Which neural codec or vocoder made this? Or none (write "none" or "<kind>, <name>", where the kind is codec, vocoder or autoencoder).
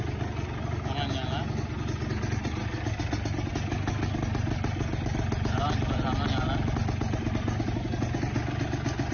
none